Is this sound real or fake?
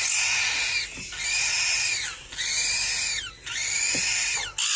real